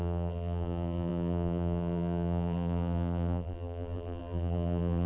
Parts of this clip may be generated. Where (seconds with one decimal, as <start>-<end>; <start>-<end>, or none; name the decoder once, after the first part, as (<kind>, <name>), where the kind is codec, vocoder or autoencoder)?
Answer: 0.0-5.1 (vocoder, BigVGAN v2)